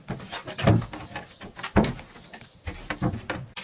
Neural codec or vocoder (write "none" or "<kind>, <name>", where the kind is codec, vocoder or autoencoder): none